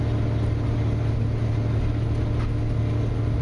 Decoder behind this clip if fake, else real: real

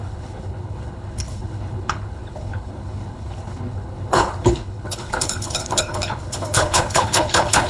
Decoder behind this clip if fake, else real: fake, codec, HILCodec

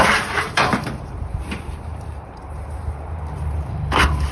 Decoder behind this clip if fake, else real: fake, vocoder, BigVGAN v2